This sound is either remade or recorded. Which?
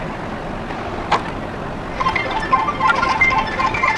recorded